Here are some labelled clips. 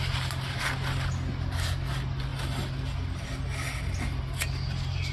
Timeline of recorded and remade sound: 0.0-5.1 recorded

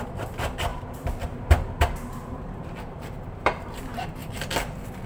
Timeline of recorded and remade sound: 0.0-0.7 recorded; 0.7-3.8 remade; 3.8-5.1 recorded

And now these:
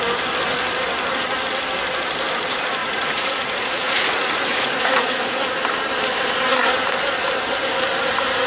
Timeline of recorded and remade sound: 0.0-2.8 recorded; 2.8-5.4 remade; 5.4-8.5 recorded

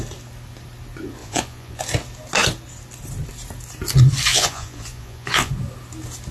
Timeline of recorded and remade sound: 0.0-1.2 recorded; 1.2-1.8 remade; 1.8-4.3 recorded; 4.3-5.5 remade; 5.5-6.3 recorded

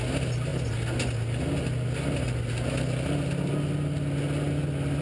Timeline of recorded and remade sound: 0.0-5.0 recorded

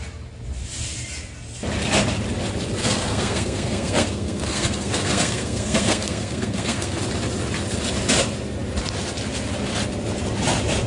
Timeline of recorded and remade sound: 0.0-2.8 recorded; 2.8-7.0 remade; 7.0-10.9 recorded